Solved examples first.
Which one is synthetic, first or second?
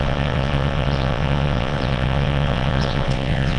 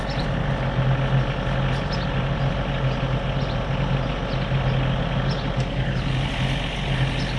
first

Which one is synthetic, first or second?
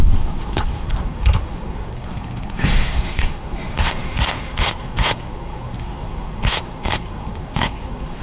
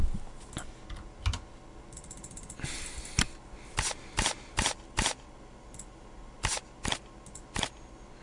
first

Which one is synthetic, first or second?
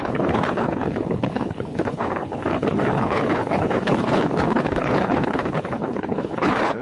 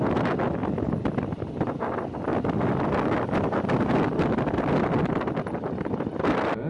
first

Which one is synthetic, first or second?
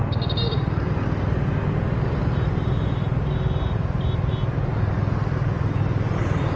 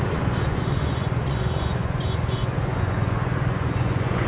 second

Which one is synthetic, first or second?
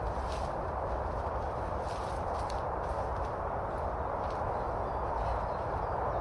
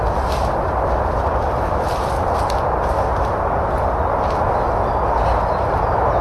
first